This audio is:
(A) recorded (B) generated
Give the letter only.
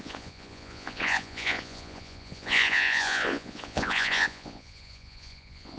B